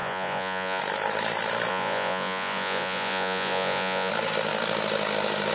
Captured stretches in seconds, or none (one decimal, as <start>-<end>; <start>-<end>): 0.8-1.7; 4.1-5.5